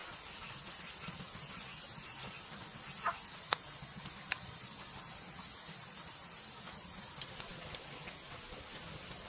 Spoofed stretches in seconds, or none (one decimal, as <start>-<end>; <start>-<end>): 0.0-9.3

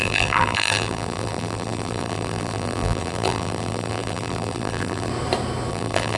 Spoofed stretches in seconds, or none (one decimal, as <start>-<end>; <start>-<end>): 0.0-5.1; 5.7-6.2

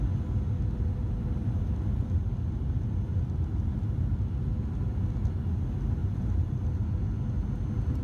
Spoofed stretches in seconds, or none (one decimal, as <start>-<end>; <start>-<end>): 6.0-6.6

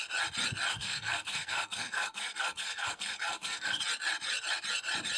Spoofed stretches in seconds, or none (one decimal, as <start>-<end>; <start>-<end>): 0.7-3.8

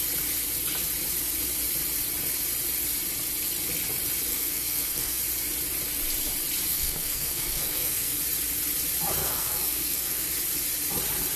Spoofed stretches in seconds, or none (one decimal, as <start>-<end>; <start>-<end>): 4.3-5.2; 6.7-8.2; 9.2-10.3

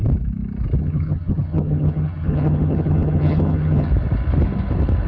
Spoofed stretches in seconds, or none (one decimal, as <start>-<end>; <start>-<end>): 0.8-3.9